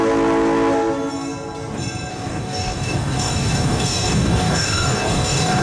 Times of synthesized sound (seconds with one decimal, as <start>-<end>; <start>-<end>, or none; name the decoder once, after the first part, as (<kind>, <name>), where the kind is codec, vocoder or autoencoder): 2.1-5.6 (codec, DAC)

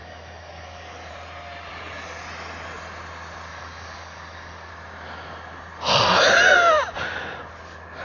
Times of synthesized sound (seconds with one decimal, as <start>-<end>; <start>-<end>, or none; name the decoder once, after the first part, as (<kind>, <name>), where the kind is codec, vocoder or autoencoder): 0.0-1.1 (codec, DAC); 3.5-4.7

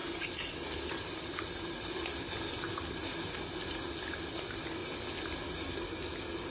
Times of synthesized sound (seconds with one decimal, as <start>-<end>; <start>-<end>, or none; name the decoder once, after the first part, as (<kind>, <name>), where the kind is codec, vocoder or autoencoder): none

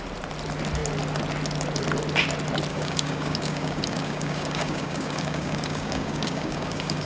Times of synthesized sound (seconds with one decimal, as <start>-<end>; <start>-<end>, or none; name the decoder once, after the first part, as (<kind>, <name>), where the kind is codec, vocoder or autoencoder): 2.7-7.1 (codec, DAC)

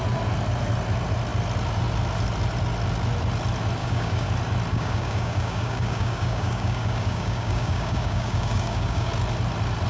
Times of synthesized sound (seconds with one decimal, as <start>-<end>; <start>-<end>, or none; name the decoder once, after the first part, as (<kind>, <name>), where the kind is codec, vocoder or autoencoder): 3.8-4.3 (codec, DAC); 4.7-9.1

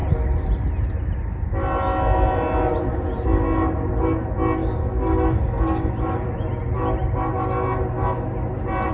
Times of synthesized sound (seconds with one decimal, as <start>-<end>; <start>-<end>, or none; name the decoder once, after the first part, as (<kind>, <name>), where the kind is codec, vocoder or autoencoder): 4.6-5.9 (codec, DAC)